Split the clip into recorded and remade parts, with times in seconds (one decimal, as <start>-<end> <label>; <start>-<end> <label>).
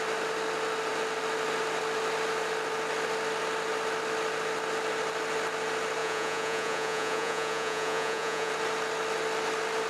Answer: 0.0-6.0 recorded; 6.0-8.5 remade; 8.5-9.9 recorded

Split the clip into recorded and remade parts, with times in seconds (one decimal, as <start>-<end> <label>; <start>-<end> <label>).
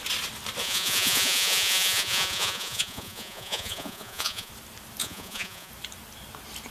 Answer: 0.0-0.6 recorded; 0.6-4.5 remade; 4.5-5.0 recorded; 5.0-5.7 remade; 5.7-6.7 recorded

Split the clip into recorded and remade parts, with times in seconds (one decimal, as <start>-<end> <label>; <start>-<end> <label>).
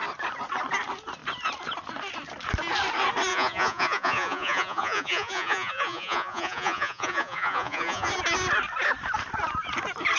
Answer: 0.0-3.3 recorded; 3.3-8.1 remade; 8.1-10.2 recorded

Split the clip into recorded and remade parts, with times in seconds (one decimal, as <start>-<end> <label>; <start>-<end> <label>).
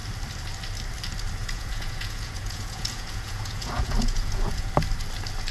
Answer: 0.0-1.4 recorded; 1.4-4.7 remade; 4.7-5.5 recorded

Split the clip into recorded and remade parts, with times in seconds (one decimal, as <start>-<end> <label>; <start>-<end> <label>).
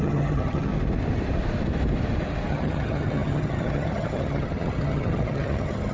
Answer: 0.0-0.7 remade; 0.7-2.5 recorded; 2.5-5.9 remade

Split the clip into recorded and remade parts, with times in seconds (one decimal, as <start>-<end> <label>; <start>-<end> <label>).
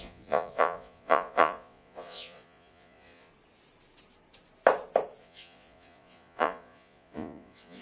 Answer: 0.0-3.3 remade; 3.3-5.2 recorded; 5.2-7.8 remade